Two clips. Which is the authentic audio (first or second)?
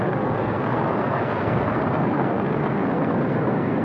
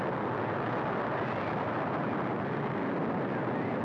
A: second